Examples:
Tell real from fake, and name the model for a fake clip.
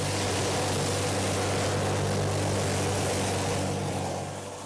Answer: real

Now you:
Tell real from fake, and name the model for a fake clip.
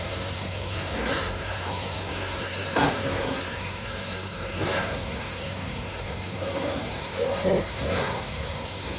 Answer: fake, codec, SNAC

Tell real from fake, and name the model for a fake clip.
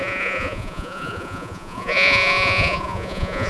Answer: fake, vocoder, Vocos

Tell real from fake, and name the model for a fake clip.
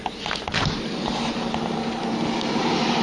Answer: real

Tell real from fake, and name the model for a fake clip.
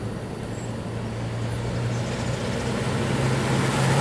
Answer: real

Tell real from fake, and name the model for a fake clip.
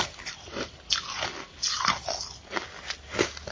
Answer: real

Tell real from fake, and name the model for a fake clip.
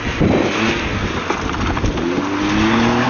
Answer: real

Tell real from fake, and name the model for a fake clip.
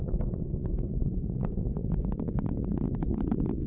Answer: fake, vocoder, Vocos